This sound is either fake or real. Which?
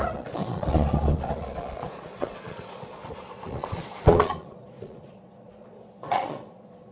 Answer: fake